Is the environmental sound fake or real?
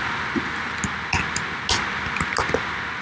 real